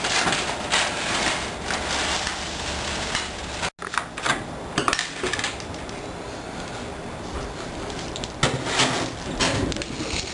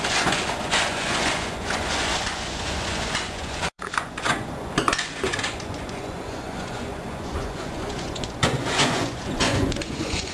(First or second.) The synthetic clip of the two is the second